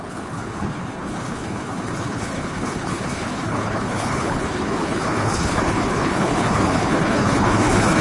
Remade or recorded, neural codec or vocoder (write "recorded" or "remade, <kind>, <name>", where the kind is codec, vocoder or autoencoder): remade, codec, HILCodec